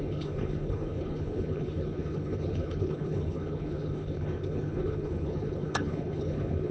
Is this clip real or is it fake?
fake